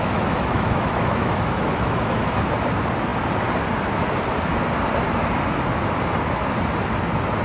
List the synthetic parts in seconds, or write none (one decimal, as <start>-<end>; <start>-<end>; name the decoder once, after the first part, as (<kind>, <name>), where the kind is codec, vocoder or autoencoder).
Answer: 0.0-2.3 (autoencoder, DAC-VAE)